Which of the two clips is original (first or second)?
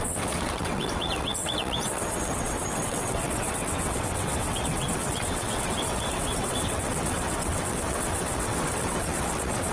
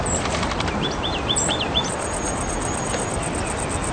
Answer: second